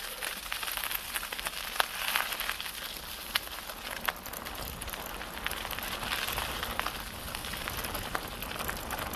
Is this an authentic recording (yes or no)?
yes